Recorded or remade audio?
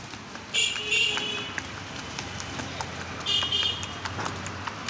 recorded